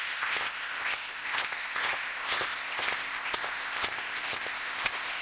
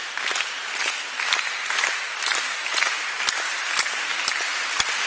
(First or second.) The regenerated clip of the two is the first